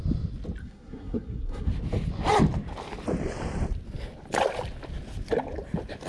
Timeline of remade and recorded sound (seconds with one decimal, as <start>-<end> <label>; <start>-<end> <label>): 0.0-0.6 recorded; 0.6-1.7 remade; 1.7-6.1 recorded